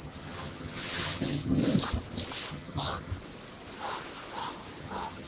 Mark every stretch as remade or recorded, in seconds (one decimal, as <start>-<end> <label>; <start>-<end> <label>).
0.0-1.6 remade; 1.6-2.5 recorded; 2.5-3.1 remade; 3.1-4.8 recorded; 4.8-5.3 remade